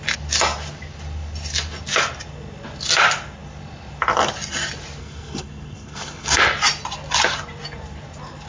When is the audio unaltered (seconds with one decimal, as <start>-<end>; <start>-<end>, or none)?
0.0-5.0; 6.4-8.5